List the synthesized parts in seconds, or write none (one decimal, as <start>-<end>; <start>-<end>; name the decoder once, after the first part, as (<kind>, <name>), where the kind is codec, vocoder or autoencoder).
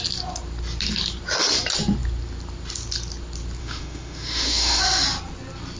3.6-4.8 (autoencoder, DAC-VAE)